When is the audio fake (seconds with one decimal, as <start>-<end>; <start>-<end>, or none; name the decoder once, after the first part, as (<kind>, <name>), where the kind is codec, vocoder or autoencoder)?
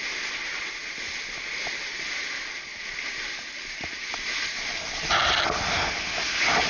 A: none